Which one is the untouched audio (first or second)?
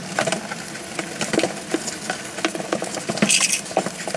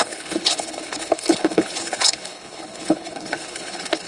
first